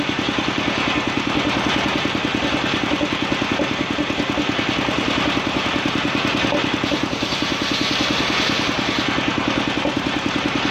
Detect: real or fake real